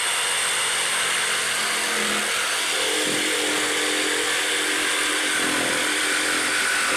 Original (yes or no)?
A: yes